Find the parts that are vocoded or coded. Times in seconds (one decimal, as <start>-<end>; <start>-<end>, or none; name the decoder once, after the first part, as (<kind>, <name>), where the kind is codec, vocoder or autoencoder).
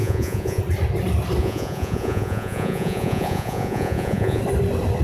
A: 0.0-0.6 (vocoder, Vocos); 1.4-4.4